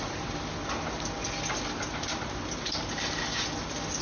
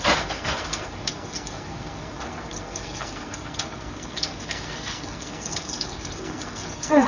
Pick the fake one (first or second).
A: second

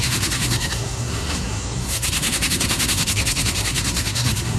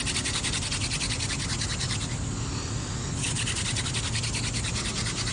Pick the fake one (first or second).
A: first